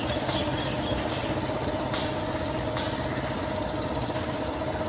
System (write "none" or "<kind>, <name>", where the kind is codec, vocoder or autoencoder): none